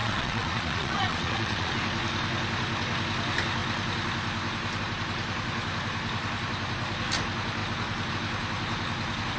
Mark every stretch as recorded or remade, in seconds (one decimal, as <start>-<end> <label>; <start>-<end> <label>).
0.0-1.7 remade; 1.7-9.4 recorded